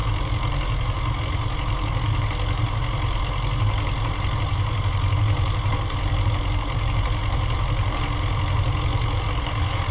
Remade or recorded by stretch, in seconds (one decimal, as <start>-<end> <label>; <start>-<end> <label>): 0.0-9.9 recorded